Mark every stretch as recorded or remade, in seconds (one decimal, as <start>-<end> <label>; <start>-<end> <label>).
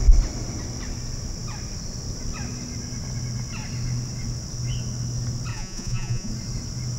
0.0-5.5 recorded; 5.5-6.3 remade; 6.3-7.0 recorded